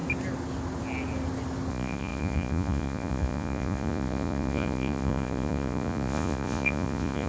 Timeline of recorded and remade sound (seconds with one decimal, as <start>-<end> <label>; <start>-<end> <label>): 0.0-1.7 recorded; 1.7-7.3 remade